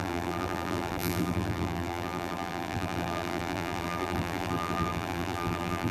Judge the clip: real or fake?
fake